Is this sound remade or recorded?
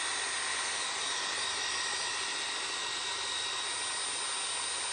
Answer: recorded